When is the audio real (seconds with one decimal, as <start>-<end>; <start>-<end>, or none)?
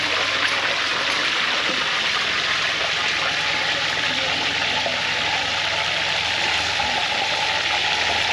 0.0-2.8; 6.0-8.3